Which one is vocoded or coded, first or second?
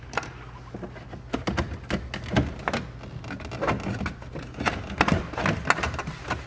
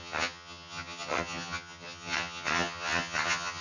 second